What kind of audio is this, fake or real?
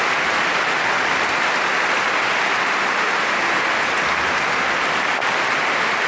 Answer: real